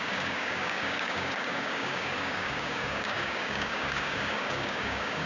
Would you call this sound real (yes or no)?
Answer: no